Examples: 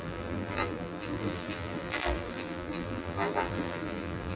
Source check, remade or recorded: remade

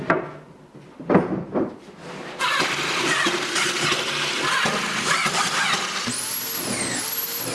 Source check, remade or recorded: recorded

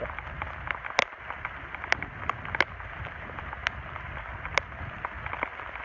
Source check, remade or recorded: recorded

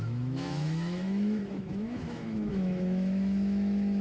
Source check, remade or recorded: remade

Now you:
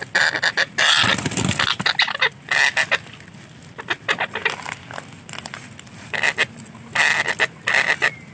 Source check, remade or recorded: recorded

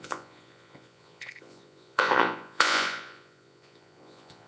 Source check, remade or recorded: remade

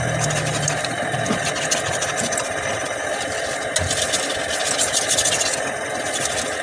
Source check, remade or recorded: recorded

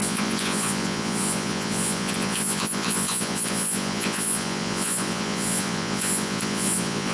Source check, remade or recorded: remade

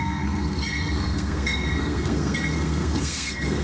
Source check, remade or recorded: remade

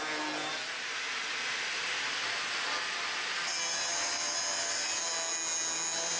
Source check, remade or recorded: recorded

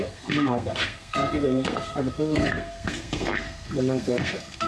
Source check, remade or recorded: remade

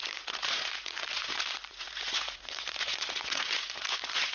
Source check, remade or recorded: remade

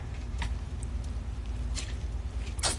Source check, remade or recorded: remade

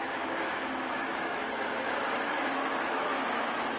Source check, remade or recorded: remade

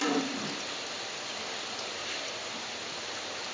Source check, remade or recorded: remade